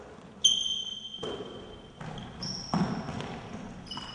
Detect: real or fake real